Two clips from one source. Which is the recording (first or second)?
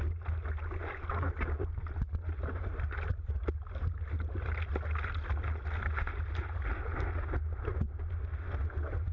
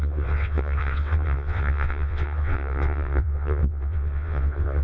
first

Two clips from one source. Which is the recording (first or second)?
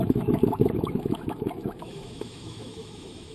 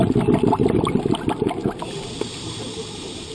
second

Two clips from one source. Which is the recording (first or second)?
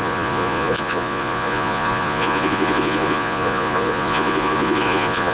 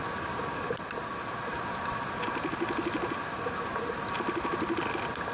second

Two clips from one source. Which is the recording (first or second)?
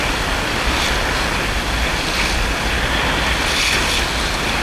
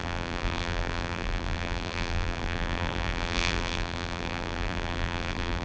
first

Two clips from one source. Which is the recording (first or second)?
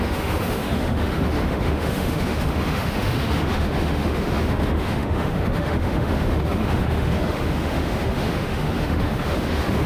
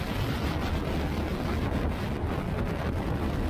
second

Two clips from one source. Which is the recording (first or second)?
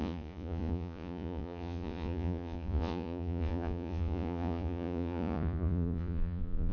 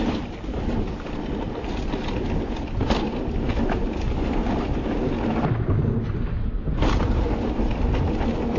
second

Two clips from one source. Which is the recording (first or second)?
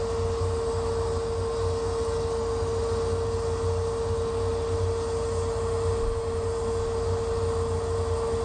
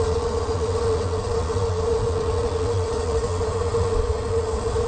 first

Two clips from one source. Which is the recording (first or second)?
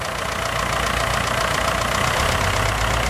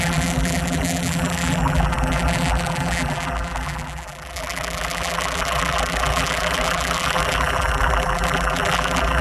first